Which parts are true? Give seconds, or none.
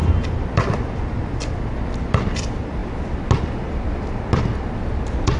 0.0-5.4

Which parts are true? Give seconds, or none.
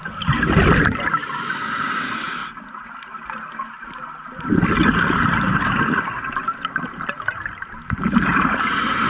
0.0-9.1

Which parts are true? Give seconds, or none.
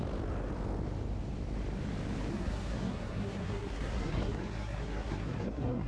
0.0-2.3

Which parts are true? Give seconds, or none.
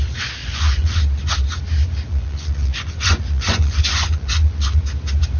0.0-0.4; 1.0-2.1; 4.8-5.4